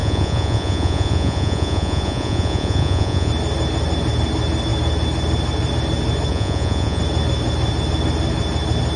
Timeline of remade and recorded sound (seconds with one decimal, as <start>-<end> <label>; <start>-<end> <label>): 0.0-3.3 remade; 3.3-6.3 recorded; 6.3-7.0 remade; 7.0-9.0 recorded